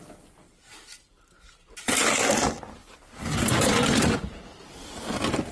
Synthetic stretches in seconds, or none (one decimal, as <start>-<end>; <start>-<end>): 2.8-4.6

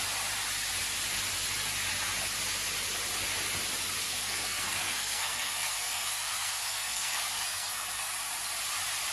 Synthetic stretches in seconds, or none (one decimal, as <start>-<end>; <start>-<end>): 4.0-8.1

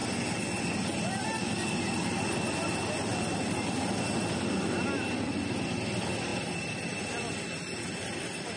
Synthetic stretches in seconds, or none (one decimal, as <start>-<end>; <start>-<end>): none

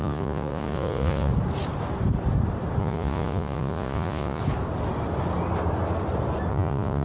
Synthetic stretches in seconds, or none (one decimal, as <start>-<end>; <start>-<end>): 0.0-1.3; 2.8-4.4; 6.5-7.0

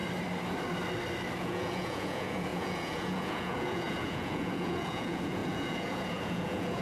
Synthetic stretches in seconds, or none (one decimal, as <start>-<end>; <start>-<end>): 1.4-6.8